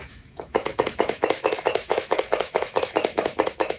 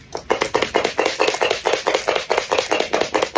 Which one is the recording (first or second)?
second